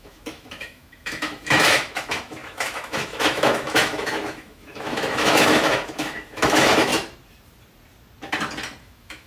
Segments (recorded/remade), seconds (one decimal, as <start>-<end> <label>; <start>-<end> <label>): 0.0-6.9 remade; 6.9-8.8 recorded; 8.8-9.3 remade